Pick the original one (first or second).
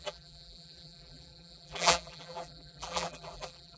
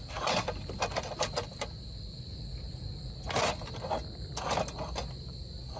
second